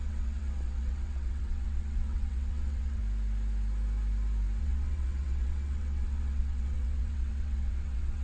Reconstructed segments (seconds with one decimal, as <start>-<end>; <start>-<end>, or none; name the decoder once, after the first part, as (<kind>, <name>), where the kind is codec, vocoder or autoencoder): 0.0-3.0 (vocoder, WaveNeXt); 4.6-8.2